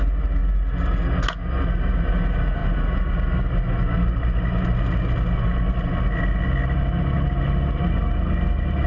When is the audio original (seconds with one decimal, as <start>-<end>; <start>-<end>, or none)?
0.0-8.9